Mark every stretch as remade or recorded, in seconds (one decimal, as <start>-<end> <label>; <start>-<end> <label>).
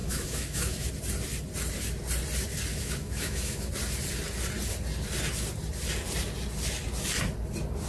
0.0-0.9 remade; 0.9-2.7 recorded; 2.7-3.7 remade; 3.7-7.9 recorded